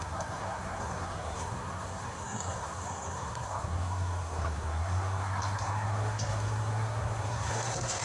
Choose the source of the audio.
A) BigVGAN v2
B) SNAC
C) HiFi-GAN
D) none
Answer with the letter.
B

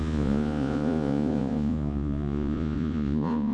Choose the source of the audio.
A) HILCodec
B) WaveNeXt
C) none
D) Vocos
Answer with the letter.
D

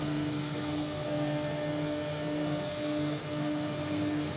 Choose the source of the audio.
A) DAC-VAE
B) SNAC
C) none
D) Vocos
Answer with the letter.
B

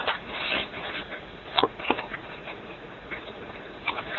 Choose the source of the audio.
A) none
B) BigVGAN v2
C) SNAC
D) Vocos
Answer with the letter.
D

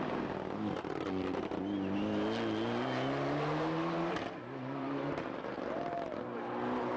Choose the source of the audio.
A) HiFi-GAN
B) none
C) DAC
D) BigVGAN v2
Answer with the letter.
B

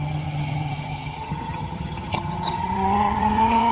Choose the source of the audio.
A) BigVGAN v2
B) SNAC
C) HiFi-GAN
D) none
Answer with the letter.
C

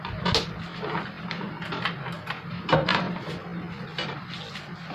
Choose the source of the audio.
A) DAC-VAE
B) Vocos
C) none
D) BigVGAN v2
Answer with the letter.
C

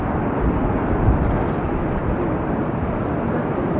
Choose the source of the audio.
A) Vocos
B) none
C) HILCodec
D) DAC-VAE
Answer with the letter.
B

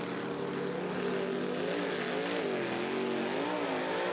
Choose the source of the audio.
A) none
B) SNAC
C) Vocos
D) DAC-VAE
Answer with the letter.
A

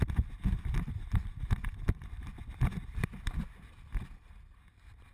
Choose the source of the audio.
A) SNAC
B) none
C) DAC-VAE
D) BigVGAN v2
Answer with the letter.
B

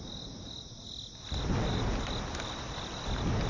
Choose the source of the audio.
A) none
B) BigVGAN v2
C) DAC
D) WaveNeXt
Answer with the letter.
A